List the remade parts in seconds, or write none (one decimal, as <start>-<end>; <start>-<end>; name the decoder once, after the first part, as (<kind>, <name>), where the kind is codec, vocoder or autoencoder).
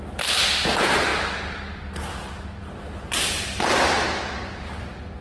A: none